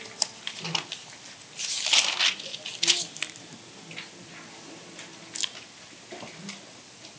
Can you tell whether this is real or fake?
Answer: real